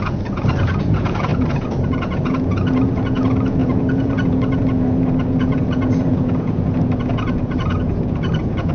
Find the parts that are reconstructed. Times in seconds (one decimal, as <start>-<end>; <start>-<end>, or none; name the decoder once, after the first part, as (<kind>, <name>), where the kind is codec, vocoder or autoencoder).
0.0-8.7 (vocoder, Vocos)